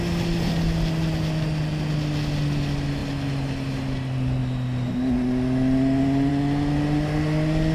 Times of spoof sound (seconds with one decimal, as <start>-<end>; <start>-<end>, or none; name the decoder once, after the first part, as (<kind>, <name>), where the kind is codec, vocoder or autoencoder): none